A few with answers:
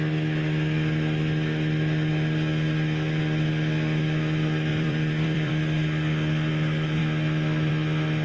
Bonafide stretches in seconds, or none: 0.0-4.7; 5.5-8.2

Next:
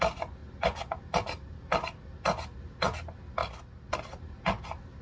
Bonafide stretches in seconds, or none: 0.0-5.0

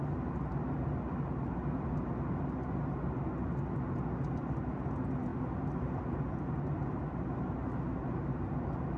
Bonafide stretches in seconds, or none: 0.0-9.0

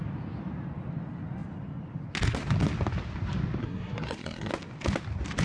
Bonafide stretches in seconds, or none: 0.0-3.6; 4.5-5.4

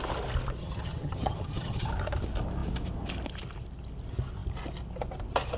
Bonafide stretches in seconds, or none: 0.0-0.6; 1.9-5.6

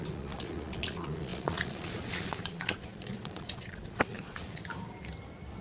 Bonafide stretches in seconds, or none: 4.6-5.6

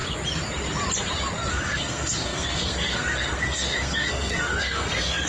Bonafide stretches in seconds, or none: 0.0-1.5

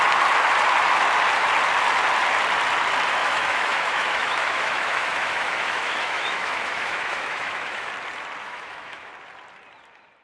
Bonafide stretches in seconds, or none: 0.0-3.2; 7.9-8.4; 9.1-10.2